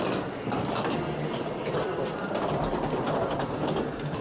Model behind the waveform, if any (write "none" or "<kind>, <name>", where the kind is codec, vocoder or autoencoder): none